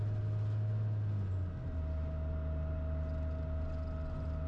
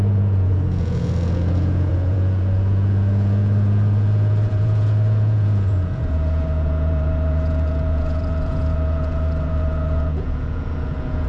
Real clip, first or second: first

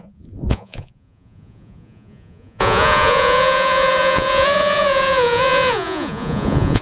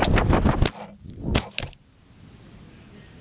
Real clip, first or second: second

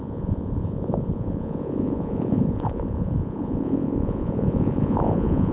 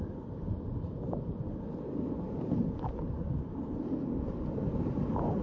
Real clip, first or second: second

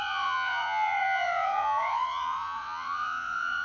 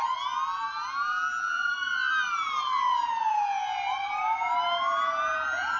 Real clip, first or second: second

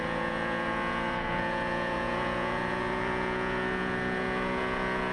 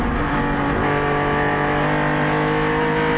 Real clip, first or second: second